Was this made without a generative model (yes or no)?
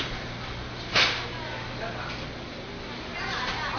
yes